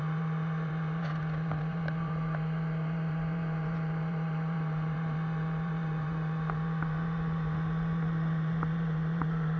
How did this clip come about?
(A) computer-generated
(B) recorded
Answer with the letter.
A